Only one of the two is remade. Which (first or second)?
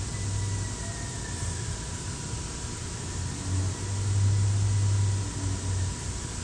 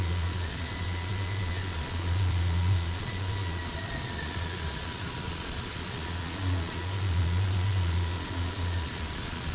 second